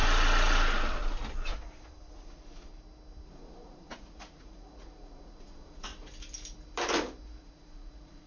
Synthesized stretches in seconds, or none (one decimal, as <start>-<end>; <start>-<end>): 2.1-2.7; 3.3-5.9; 7.4-8.3